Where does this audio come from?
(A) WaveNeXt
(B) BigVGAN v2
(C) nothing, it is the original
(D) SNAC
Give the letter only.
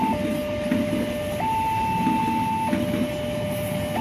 C